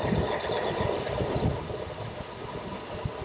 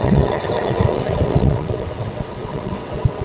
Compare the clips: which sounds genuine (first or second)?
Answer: first